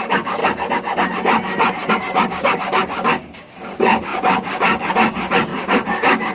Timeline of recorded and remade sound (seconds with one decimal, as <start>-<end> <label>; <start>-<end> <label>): 0.0-0.4 remade; 0.4-1.9 recorded; 1.9-6.3 remade